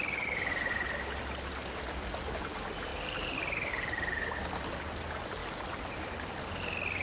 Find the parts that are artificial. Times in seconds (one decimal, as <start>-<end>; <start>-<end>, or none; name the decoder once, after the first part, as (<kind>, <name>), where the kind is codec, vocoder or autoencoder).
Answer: none